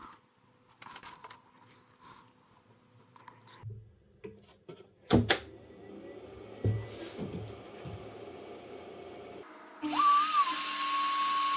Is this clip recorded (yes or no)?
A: yes